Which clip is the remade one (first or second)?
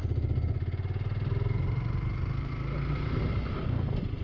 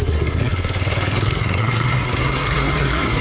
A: second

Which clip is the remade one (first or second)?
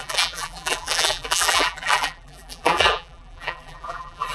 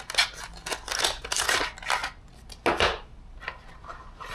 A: first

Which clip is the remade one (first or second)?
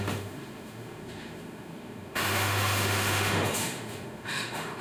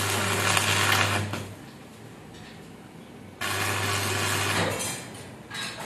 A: first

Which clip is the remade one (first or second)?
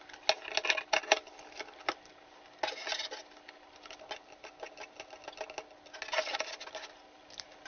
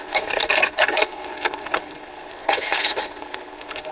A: second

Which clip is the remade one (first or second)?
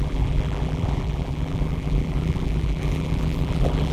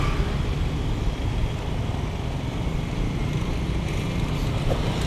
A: first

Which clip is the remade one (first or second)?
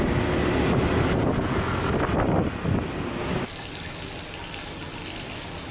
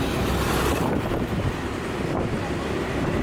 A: second